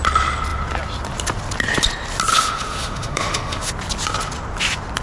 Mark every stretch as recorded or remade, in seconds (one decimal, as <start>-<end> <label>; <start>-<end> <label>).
0.0-2.3 recorded; 2.3-3.7 remade; 3.7-5.0 recorded